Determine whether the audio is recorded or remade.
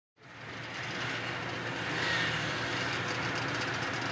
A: recorded